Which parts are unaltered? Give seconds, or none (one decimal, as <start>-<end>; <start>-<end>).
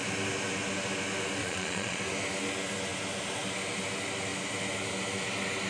0.0-1.4; 2.0-5.7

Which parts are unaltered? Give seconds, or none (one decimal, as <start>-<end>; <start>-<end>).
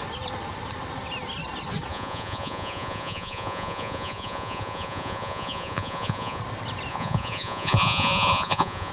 0.0-1.9; 6.4-6.9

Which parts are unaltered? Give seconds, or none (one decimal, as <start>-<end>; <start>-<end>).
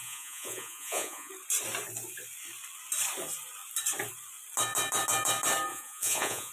1.3-5.7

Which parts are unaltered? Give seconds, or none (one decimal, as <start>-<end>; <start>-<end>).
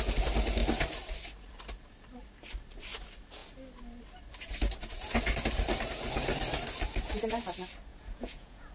0.0-7.9